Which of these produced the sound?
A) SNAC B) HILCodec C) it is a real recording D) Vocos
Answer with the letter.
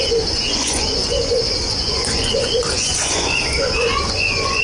D